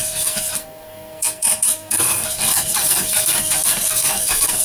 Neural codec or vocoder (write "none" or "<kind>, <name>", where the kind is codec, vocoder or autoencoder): codec, SNAC